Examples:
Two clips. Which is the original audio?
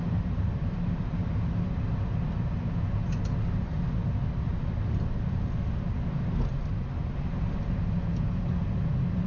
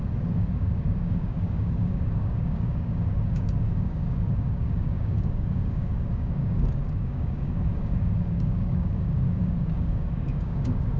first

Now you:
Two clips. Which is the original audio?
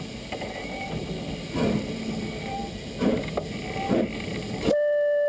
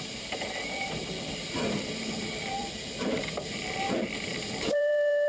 first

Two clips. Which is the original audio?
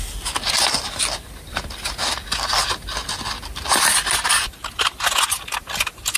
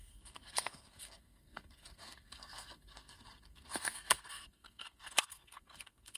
first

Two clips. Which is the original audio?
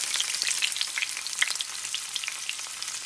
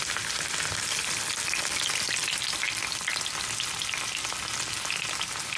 second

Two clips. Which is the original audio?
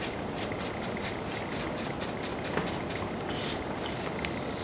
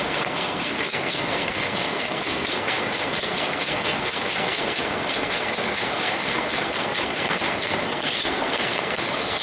first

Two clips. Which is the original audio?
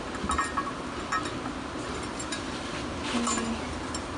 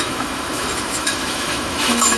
first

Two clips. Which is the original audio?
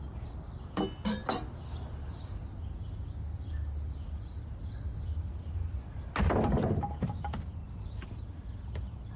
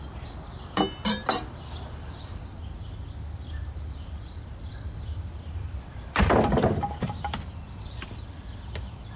first